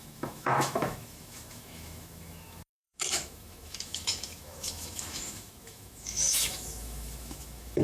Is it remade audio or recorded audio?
remade